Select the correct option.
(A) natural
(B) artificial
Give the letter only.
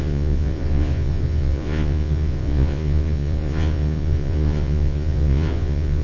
B